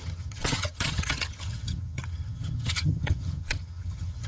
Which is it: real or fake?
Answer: fake